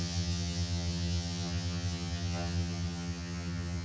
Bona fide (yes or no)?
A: no